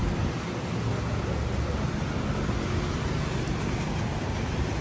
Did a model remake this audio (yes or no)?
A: no